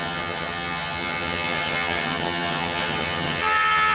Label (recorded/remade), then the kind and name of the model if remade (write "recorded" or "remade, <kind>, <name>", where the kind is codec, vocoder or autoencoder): remade, vocoder, HiFi-GAN